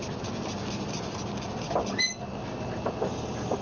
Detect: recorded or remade recorded